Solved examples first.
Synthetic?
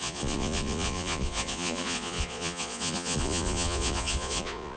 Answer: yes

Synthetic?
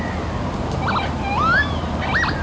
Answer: no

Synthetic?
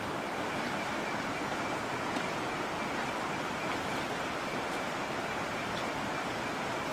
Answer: no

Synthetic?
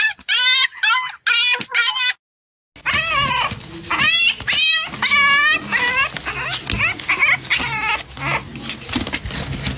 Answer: no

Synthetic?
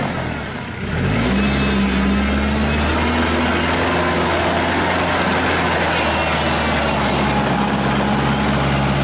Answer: no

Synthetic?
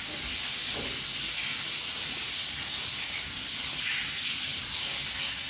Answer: no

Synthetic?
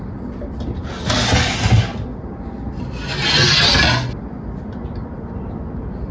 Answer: no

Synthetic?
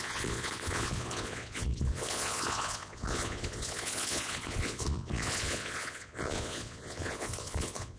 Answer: yes